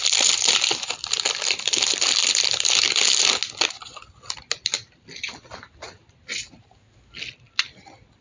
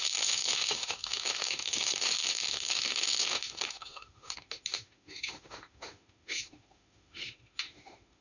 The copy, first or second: second